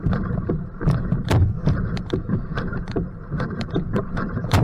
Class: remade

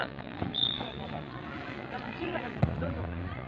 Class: remade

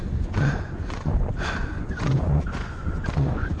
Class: remade